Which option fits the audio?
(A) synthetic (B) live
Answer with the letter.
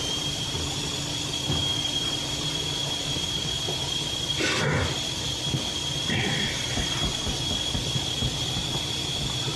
B